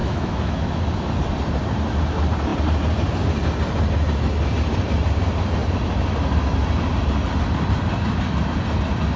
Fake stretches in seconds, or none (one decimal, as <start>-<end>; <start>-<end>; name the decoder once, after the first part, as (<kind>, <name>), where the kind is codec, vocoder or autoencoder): 0.0-0.8 (autoencoder, DAC-VAE)